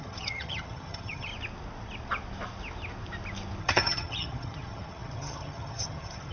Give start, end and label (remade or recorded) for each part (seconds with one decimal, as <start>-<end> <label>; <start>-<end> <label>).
0.0-1.3 remade; 1.3-3.6 recorded; 3.6-6.3 remade